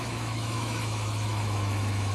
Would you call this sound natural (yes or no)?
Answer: no